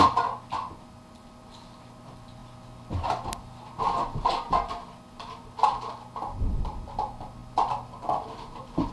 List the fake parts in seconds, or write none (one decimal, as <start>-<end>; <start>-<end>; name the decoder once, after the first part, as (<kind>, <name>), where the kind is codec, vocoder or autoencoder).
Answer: none